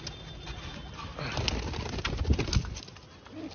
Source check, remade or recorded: recorded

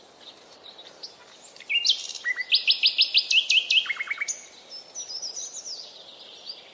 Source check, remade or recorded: recorded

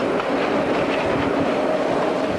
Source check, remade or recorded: recorded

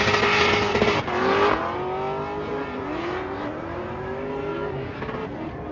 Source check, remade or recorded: recorded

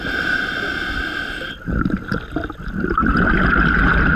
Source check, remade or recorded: recorded